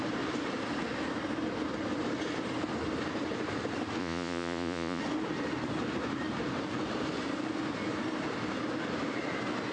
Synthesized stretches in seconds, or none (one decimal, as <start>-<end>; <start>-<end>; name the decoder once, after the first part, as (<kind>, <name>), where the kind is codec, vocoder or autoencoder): 4.0-5.0 (vocoder, Vocos)

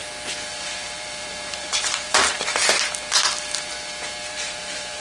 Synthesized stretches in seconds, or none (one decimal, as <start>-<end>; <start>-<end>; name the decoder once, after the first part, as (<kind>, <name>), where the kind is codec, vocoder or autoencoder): 0.5-2.6 (vocoder, BigVGAN v2); 4.3-5.0

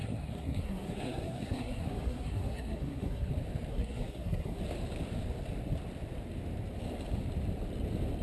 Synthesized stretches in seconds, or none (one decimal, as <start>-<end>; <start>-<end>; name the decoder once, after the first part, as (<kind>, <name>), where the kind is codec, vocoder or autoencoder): 0.0-3.3 (codec, SNAC); 3.7-4.6

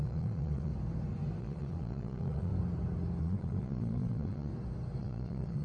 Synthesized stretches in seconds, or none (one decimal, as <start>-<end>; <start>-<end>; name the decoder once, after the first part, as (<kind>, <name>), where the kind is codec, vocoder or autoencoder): 0.0-0.7 (vocoder, Vocos); 1.4-2.5; 3.2-4.5; 5.0-5.6

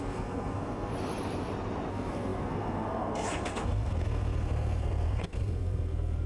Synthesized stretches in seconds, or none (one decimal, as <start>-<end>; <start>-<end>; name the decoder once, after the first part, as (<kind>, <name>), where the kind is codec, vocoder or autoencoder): 0.0-0.9 (codec, SNAC); 1.9-6.3

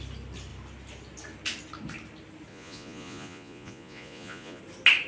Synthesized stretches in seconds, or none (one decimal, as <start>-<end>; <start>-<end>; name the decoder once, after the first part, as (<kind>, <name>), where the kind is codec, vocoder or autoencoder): 2.5-4.6 (vocoder, Vocos)